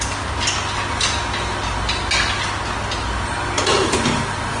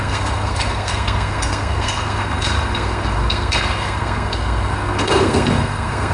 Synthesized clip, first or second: second